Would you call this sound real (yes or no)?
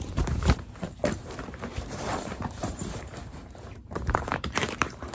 no